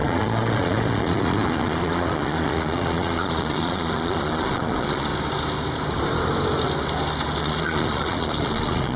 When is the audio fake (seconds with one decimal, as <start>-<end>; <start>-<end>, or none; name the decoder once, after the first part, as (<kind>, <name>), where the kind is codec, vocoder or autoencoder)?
0.0-5.1 (vocoder, Vocos); 7.4-9.0